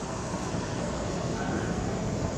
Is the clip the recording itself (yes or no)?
no